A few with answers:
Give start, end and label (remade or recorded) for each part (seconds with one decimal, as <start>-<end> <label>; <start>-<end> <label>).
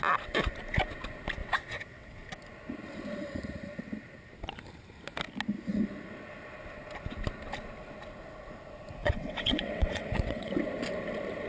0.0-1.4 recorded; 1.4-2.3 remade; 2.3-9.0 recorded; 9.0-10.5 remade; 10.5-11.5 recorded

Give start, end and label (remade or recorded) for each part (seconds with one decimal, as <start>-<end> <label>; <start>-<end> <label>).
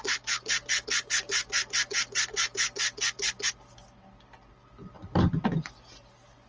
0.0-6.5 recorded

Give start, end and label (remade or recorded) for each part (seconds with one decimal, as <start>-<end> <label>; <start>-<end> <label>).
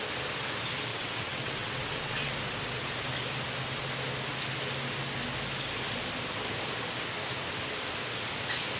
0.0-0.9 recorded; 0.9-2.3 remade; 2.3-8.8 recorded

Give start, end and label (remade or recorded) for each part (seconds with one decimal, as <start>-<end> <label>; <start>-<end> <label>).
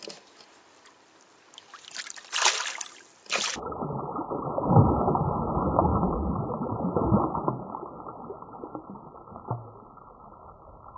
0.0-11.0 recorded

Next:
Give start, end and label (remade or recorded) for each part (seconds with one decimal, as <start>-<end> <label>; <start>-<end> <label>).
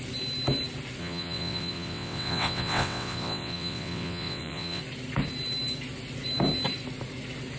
0.0-1.0 recorded; 1.0-4.8 remade; 4.8-7.6 recorded